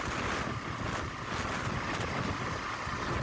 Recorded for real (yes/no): yes